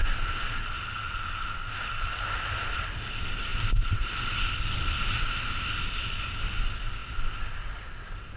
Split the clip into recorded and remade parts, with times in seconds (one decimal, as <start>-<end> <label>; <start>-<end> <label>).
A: 0.0-3.5 recorded; 3.5-4.2 remade; 4.2-8.4 recorded